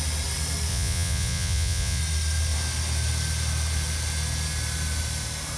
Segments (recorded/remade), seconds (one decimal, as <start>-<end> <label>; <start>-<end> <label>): 0.0-0.7 recorded; 0.7-2.0 remade; 2.0-5.6 recorded